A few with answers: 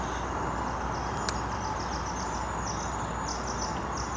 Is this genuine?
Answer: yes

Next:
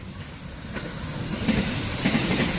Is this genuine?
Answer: yes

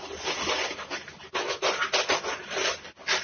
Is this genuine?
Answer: yes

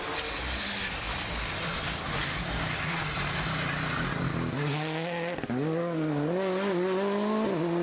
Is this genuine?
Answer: yes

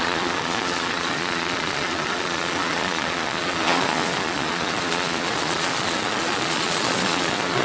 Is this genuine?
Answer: no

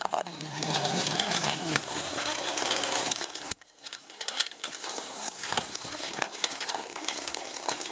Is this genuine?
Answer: no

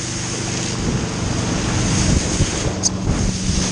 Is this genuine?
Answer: yes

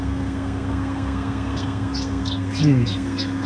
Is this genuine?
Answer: no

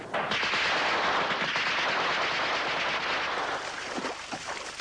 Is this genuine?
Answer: yes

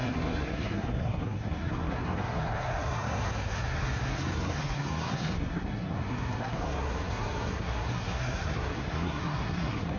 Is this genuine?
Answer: no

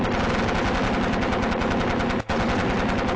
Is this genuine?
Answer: yes